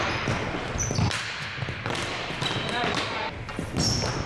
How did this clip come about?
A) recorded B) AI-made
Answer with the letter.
A